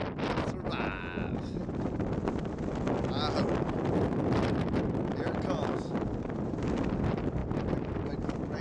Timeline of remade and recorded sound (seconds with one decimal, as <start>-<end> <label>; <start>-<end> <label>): 0.0-8.6 recorded